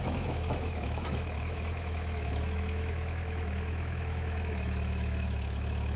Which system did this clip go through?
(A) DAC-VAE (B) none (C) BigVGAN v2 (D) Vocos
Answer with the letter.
A